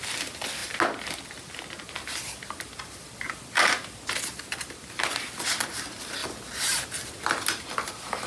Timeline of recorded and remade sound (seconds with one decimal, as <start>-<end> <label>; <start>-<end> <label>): 0.0-8.3 recorded